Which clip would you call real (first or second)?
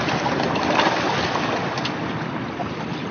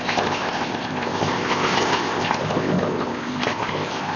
first